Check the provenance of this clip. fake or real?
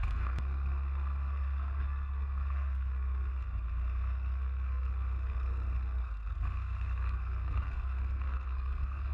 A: fake